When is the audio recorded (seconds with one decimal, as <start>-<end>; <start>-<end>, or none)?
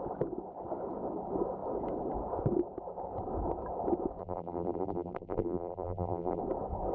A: 0.0-4.2; 6.4-6.9